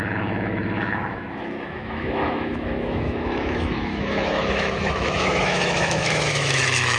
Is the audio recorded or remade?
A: remade